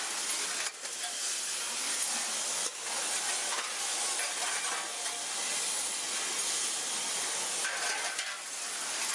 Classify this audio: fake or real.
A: real